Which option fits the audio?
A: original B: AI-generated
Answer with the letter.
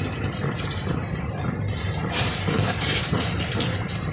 B